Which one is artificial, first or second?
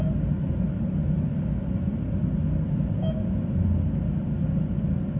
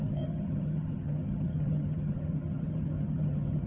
second